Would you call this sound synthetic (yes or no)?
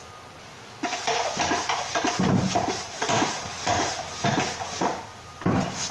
no